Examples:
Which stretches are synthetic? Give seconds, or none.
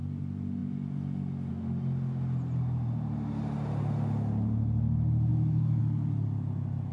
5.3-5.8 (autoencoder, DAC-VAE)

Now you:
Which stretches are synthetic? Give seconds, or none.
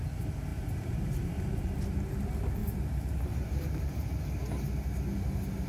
0.5-1.3 (vocoder, BigVGAN v2); 2.6-4.2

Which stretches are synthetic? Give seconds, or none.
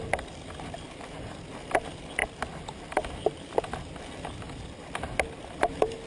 none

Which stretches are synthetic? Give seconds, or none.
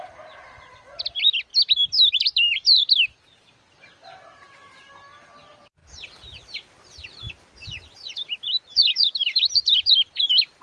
0.0-1.5 (vocoder, BigVGAN v2); 2.1-2.8; 3.5-10.6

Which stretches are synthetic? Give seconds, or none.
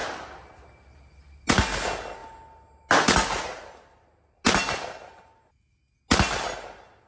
0.0-0.6 (vocoder, BigVGAN v2)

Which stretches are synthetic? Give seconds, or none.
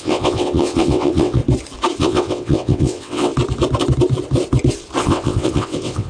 0.0-1.4 (vocoder, WaveNeXt); 2.0-3.3; 5.0-6.1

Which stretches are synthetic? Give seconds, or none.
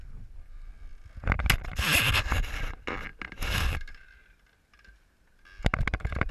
none